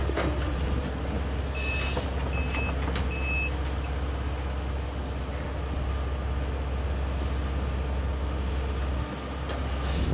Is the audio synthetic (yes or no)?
no